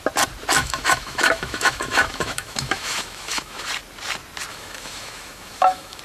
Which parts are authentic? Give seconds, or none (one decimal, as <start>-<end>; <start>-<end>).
0.0-0.6; 3.7-4.5